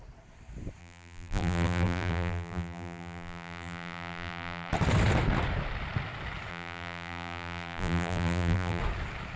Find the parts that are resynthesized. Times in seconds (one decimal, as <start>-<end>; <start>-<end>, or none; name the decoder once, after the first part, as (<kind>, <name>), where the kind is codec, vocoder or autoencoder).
0.8-4.7 (vocoder, BigVGAN v2); 6.5-8.8